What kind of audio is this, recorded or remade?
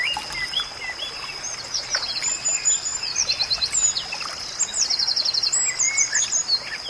recorded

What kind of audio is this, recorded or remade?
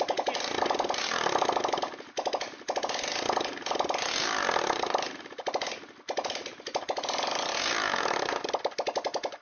recorded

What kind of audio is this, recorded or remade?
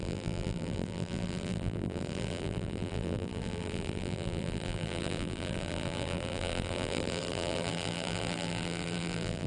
remade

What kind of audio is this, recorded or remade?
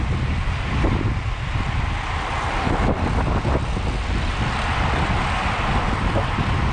recorded